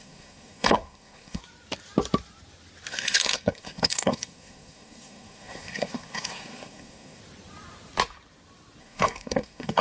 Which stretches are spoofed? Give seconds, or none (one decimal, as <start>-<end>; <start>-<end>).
0.0-1.4; 2.9-7.2; 8.8-9.8